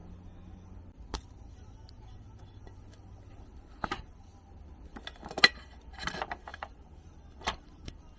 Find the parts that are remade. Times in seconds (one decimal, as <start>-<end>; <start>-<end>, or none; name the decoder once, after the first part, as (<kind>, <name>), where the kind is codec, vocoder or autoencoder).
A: 3.9-4.3 (vocoder, BigVGAN v2); 5.7-8.2

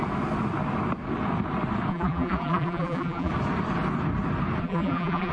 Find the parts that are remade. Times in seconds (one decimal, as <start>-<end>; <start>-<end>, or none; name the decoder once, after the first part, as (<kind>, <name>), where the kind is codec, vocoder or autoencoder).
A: 1.9-3.3 (vocoder, BigVGAN v2); 4.6-5.3

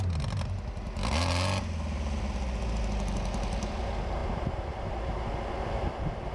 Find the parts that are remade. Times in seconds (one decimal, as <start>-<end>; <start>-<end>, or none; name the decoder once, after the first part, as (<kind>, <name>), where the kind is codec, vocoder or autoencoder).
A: none

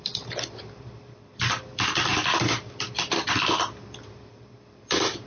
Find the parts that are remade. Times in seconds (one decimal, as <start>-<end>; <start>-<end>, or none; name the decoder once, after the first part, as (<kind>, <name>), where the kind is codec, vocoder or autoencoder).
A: 0.0-5.3 (vocoder, BigVGAN v2)

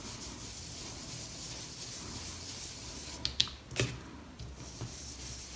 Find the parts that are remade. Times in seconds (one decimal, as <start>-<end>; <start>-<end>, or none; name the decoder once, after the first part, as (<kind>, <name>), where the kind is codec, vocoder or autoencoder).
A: none

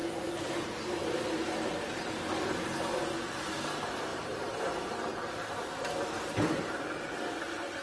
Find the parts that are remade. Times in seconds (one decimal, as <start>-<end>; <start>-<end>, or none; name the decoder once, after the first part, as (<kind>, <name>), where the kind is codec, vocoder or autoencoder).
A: 0.0-0.8 (vocoder, BigVGAN v2); 4.1-4.7